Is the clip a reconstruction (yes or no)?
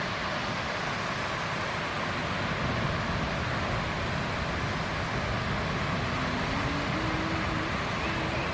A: no